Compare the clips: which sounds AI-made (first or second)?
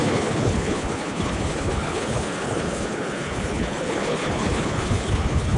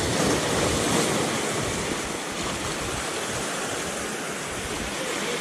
first